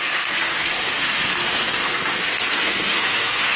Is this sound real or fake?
fake